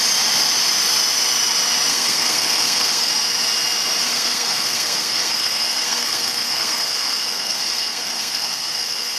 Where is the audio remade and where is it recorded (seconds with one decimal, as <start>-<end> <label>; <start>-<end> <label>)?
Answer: 0.0-1.9 recorded; 1.9-3.1 remade; 3.1-4.0 recorded; 4.0-9.2 remade